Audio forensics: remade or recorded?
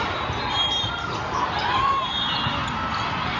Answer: recorded